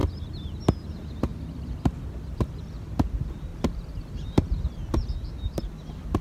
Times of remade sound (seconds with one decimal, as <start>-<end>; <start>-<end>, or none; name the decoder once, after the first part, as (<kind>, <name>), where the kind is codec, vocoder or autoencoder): 0.0-0.9 (vocoder, BigVGAN v2); 1.3-2.6; 3.5-4.6; 5.0-5.6